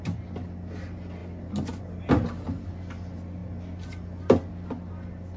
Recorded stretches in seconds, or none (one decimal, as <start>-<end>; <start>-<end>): 0.0-5.4